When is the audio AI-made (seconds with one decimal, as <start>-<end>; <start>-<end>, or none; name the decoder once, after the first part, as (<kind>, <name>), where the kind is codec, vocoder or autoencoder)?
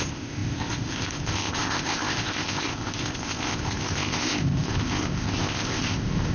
0.0-6.3 (codec, ZipCodec)